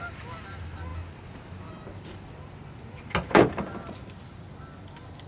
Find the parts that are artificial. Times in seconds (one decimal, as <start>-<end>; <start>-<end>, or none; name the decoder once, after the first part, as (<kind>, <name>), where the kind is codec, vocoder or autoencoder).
none